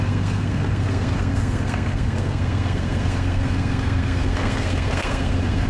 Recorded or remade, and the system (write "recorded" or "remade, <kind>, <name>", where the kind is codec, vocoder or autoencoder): remade, codec, SNAC